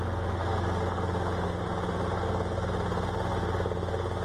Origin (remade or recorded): recorded